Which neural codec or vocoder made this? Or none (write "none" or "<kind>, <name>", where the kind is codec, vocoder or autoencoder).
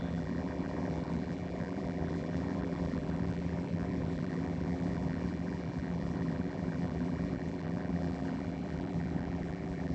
vocoder, BigVGAN v2